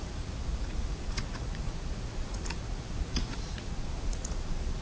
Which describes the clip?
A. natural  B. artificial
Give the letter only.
B